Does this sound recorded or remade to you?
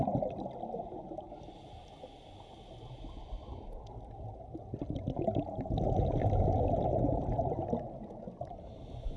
recorded